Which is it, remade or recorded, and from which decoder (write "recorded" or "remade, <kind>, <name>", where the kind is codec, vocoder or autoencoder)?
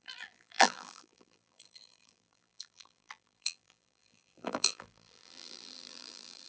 remade, vocoder, BigVGAN v2